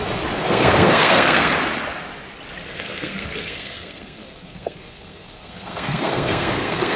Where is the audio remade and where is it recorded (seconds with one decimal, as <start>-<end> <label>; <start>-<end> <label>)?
0.0-0.4 recorded; 0.4-1.5 remade; 1.5-2.7 recorded; 2.7-7.0 remade